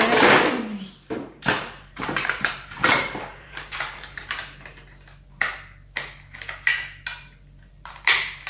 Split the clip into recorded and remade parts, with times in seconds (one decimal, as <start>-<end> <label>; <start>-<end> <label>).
0.0-0.7 recorded; 0.7-4.2 remade; 4.2-8.5 recorded